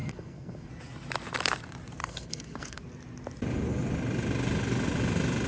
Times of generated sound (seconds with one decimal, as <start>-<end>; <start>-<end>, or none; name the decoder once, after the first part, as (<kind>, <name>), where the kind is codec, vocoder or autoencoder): 0.0-0.7 (codec, SNAC); 2.0-2.8